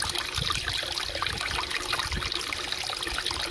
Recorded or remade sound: recorded